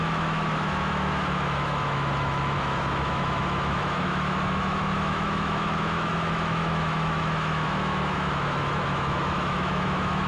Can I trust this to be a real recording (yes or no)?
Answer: no